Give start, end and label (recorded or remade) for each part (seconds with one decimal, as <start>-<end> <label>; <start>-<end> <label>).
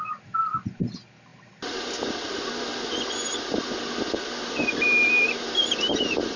0.0-6.4 recorded